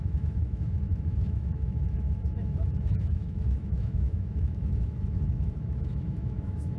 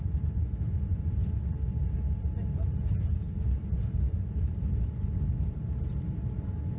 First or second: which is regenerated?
first